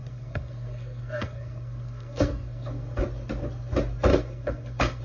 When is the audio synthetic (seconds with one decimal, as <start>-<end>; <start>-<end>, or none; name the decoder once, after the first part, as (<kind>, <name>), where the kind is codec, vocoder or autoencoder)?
0.0-3.0 (codec, SNAC); 4.1-5.0